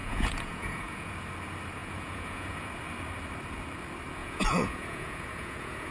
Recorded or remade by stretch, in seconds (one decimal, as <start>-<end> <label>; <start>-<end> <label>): 0.0-1.1 remade; 1.1-1.8 recorded; 1.8-2.7 remade; 2.7-4.2 recorded; 4.2-5.9 remade